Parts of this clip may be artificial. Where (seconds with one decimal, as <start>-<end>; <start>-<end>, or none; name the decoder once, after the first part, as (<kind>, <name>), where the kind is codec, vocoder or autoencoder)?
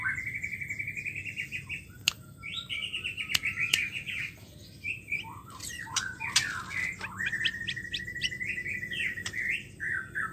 0.0-10.3 (vocoder, BigVGAN v2)